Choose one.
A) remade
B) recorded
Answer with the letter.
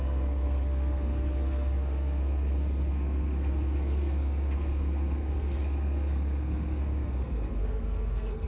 A